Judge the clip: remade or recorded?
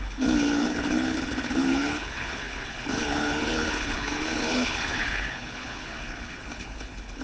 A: remade